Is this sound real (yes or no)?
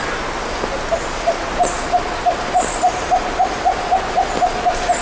yes